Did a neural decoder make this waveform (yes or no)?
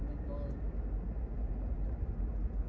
no